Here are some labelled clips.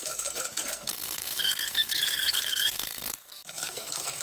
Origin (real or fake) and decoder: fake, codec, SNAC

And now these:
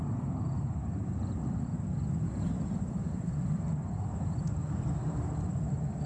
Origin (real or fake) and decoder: real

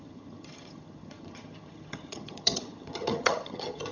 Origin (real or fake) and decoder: fake, vocoder, HiFi-GAN